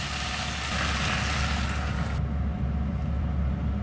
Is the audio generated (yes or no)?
no